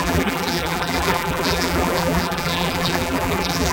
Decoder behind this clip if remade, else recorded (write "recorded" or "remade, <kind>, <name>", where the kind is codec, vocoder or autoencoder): remade, vocoder, BigVGAN v2